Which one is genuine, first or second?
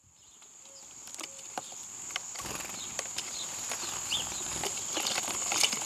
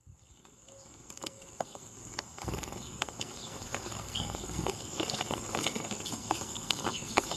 first